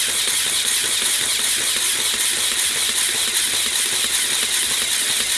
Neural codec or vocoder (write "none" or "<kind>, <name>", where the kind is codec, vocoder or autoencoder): none